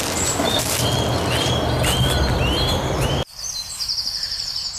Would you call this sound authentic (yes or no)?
yes